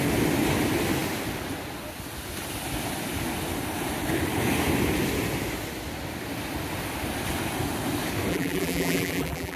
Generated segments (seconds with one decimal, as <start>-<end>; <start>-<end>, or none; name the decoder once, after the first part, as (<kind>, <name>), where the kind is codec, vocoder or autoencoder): 8.3-9.6 (vocoder, BigVGAN v2)